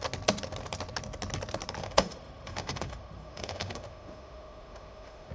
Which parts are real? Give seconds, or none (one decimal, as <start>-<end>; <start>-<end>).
0.0-1.8